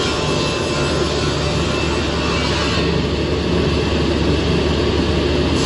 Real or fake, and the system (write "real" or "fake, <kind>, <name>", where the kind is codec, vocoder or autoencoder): real